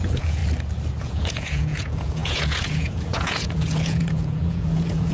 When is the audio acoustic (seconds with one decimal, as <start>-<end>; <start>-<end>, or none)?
0.4-1.0